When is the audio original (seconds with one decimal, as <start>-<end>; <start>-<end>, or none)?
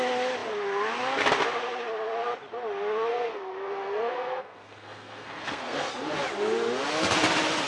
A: 0.0-3.1; 5.9-7.7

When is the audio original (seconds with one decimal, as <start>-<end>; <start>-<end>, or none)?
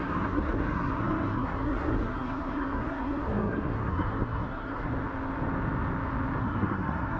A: 4.9-6.4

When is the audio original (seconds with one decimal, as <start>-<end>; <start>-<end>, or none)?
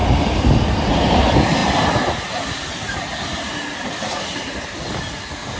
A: 0.0-5.6